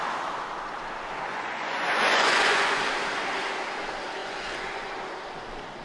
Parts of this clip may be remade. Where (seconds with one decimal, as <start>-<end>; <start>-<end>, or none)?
1.3-2.8; 4.2-4.9